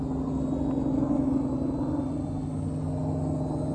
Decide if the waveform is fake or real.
real